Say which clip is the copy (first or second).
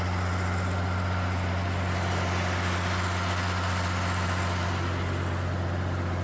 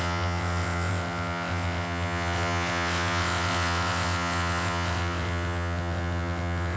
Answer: second